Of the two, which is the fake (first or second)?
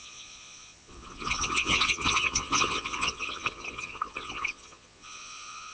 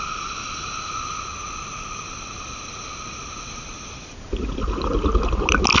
first